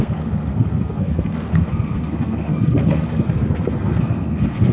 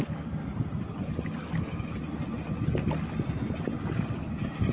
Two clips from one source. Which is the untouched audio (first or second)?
second